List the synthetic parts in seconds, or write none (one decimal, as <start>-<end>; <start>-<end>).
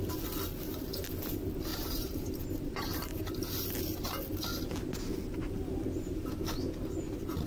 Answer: 1.7-3.2